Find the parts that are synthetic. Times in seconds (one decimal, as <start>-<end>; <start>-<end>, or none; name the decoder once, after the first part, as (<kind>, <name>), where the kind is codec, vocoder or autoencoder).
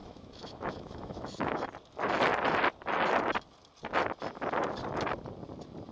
0.0-1.6 (autoencoder, DAC-VAE)